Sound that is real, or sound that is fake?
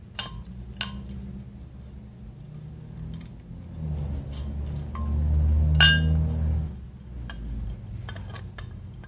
real